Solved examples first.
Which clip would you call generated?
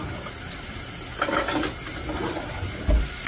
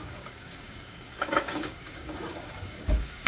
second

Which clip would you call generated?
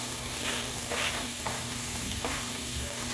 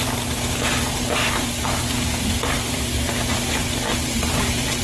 first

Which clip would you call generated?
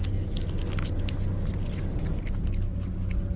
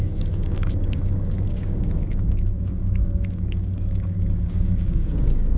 second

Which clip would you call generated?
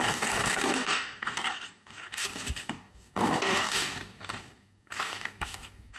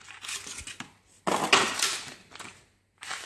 first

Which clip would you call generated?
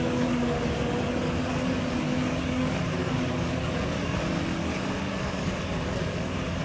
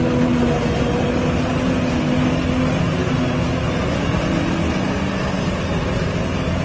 first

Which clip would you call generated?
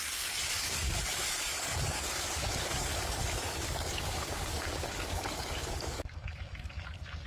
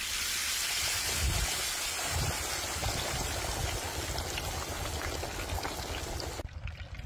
first